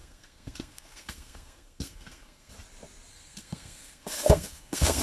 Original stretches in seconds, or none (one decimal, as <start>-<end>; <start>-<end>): 2.5-3.1